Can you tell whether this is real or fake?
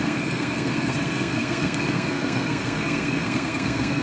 fake